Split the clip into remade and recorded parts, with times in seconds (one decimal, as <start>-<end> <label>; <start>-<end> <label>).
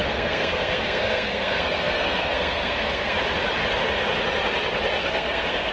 0.0-3.2 remade; 3.2-5.0 recorded; 5.0-5.7 remade